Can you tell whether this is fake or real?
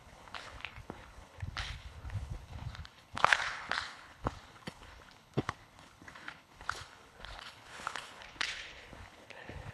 fake